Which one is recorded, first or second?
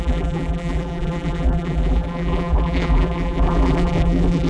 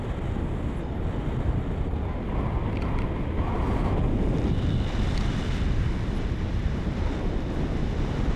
second